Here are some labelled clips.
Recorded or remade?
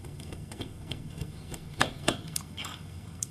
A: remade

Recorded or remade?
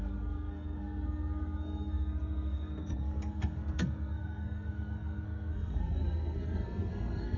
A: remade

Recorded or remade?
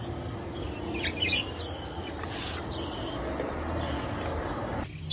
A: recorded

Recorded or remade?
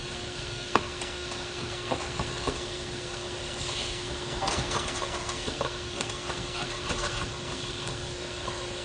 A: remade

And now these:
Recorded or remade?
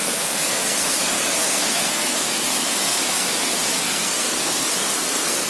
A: remade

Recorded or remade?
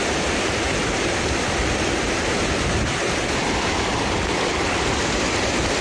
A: recorded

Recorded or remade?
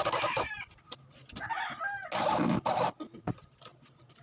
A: recorded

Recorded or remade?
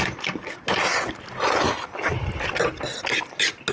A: recorded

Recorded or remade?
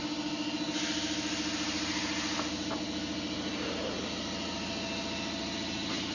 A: recorded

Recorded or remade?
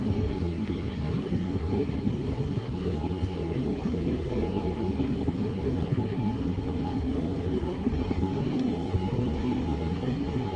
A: remade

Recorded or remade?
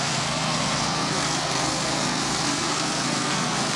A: remade